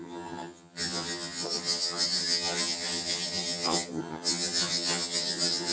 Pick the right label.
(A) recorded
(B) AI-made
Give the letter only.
B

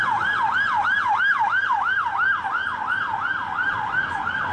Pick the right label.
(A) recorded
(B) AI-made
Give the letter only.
A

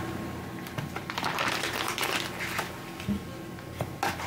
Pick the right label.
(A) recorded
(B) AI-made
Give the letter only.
A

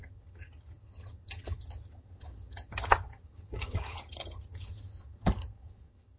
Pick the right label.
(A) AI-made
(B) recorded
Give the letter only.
A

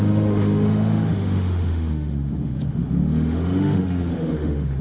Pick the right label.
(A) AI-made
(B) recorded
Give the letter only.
A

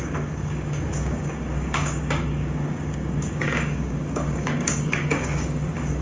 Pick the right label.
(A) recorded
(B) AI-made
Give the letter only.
B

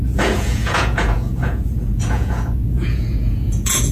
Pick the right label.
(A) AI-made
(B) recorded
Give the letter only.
A